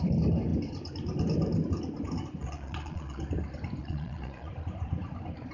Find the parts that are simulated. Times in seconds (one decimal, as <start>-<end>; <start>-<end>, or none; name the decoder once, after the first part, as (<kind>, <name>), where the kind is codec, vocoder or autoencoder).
2.4-3.2 (vocoder, Vocos); 3.8-4.5